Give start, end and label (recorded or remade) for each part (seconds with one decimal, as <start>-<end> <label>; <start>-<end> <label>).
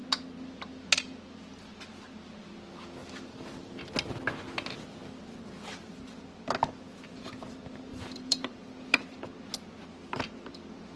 0.0-3.0 recorded; 3.0-3.8 remade; 3.8-7.9 recorded; 7.9-8.6 remade; 8.6-11.0 recorded